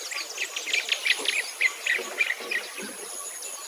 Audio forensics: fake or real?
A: real